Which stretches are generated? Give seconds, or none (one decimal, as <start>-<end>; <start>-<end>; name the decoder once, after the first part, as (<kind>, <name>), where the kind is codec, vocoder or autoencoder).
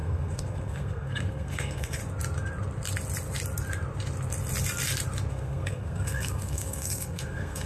0.0-2.0 (codec, SNAC); 5.3-7.7